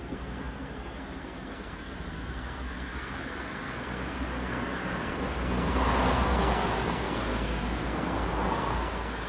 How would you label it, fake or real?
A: fake